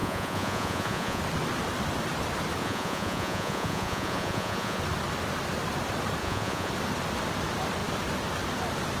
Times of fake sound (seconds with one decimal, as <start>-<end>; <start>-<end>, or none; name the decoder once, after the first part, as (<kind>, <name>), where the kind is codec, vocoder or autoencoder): 0.0-1.2 (vocoder, Vocos); 2.6-4.8; 6.2-6.7